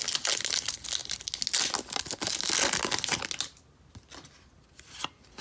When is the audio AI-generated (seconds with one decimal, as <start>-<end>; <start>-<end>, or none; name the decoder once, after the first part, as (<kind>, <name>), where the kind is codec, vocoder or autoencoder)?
none